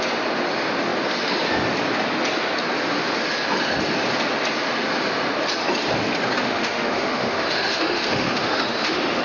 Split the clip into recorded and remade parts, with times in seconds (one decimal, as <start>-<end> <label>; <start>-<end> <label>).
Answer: 0.0-6.4 recorded; 6.4-9.2 remade